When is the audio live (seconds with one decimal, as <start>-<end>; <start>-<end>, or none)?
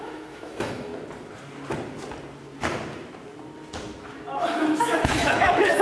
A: 0.9-4.4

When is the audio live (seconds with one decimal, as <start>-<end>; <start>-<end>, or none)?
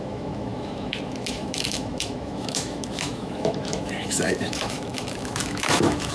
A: none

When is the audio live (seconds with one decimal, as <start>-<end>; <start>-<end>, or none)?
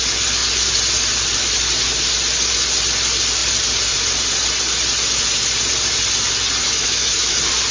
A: 0.0-6.6; 7.3-7.7